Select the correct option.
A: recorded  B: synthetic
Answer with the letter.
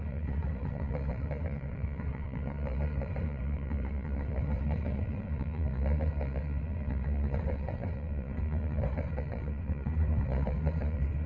B